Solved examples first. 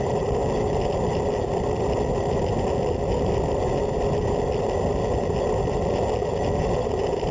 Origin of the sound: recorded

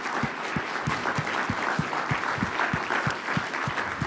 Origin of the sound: recorded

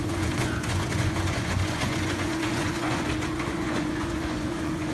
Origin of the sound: remade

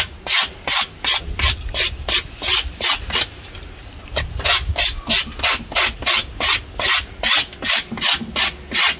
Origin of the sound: recorded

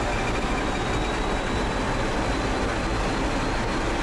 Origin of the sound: recorded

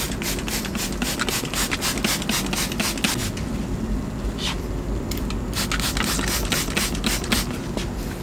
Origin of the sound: recorded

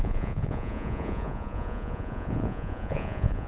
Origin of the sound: remade